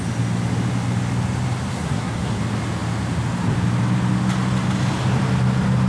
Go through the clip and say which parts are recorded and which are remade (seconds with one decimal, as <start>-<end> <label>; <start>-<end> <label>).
0.0-1.7 recorded; 1.7-2.4 remade; 2.4-5.9 recorded